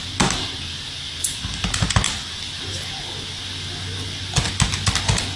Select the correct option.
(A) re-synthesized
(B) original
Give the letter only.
B